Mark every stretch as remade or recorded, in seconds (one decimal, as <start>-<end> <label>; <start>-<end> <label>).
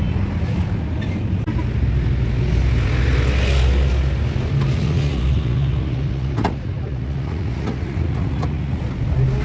0.0-4.7 recorded; 4.7-8.8 remade; 8.8-9.4 recorded